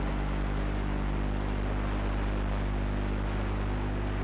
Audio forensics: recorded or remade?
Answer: recorded